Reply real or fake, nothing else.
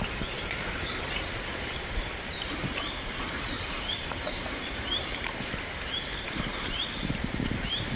fake